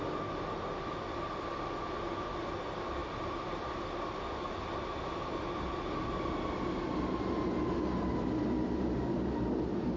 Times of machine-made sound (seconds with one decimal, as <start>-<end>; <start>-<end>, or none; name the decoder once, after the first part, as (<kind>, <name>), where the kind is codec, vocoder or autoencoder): none